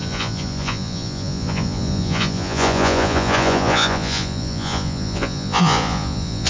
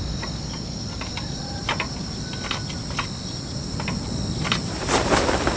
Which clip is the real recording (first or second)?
second